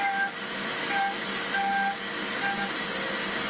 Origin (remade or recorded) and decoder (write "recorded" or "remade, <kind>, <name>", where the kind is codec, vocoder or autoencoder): recorded